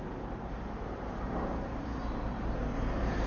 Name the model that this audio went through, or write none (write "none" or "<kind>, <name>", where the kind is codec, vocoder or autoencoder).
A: vocoder, BigVGAN v2